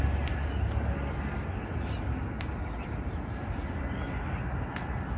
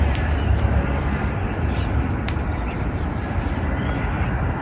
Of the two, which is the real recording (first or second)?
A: first